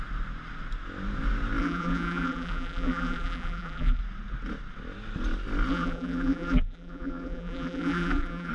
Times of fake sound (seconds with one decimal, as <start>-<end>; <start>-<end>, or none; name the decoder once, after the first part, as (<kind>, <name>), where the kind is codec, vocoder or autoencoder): 1.6-4.0 (vocoder, BigVGAN v2); 5.7-8.5